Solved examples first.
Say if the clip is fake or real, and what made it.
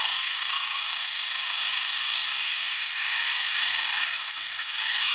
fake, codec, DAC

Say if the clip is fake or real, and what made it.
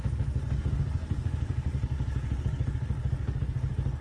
fake, codec, DAC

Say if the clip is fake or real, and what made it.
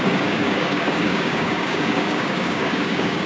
fake, codec, DAC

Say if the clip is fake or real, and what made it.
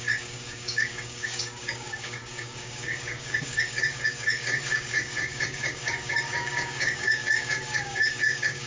fake, codec, DAC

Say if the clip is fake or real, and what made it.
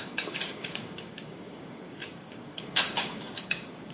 fake, codec, DAC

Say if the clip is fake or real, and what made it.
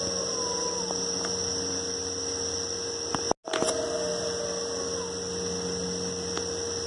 real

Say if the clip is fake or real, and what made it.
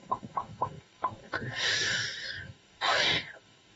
fake, codec, DAC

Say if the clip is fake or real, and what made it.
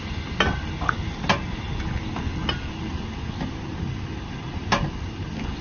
real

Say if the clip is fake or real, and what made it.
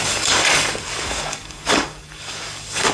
fake, codec, DAC